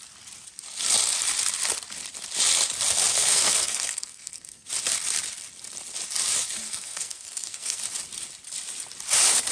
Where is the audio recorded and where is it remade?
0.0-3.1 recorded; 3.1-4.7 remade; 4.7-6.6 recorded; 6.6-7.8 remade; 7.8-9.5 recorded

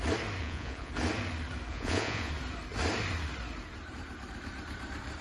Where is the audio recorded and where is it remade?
0.0-0.4 recorded; 0.4-0.9 remade; 0.9-1.7 recorded; 1.7-2.3 remade; 2.3-5.2 recorded

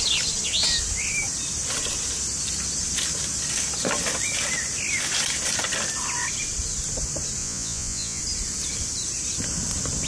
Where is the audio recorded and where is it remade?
0.0-7.4 recorded; 7.4-8.2 remade; 8.2-10.1 recorded